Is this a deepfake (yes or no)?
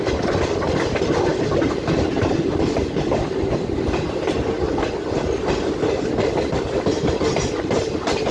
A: no